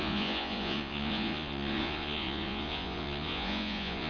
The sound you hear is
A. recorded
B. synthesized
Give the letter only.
B